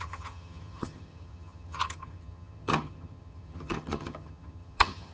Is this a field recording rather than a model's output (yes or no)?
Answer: no